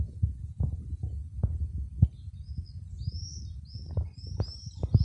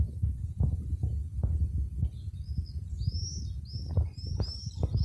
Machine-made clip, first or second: first